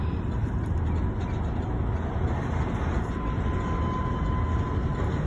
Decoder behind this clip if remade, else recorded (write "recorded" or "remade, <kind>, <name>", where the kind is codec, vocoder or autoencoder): recorded